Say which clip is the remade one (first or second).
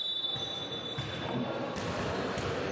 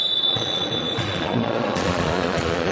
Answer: second